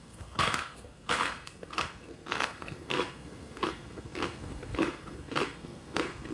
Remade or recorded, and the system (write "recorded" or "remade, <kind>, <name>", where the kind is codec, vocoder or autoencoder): remade, codec, SNAC